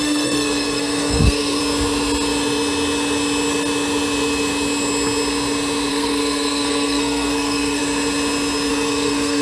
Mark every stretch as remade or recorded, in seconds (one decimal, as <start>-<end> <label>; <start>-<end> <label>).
0.0-1.6 remade; 1.6-5.9 recorded; 5.9-7.8 remade; 7.8-8.7 recorded; 8.7-9.4 remade